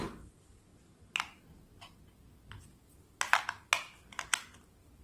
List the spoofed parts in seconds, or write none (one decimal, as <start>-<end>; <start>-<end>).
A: none